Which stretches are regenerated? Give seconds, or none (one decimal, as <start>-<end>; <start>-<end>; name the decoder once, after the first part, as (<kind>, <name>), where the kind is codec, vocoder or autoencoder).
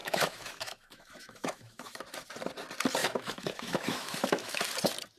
0.0-2.0 (autoencoder, DAC-VAE); 3.0-4.6